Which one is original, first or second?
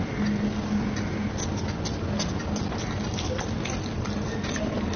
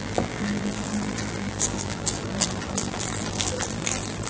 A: first